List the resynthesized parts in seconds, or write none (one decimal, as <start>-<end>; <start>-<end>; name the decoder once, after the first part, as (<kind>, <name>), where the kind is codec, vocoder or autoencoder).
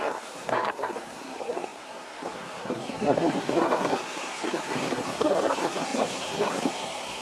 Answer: 0.0-7.2 (codec, SNAC)